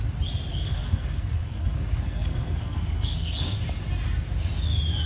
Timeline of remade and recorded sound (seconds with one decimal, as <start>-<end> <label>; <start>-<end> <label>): 0.0-0.5 recorded; 0.5-3.6 remade; 3.6-5.1 recorded